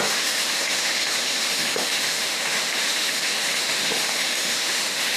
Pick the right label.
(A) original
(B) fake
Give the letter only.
B